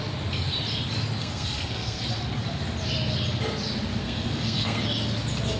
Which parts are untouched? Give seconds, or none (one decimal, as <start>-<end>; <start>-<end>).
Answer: 0.0-1.2; 2.0-4.0; 4.8-5.6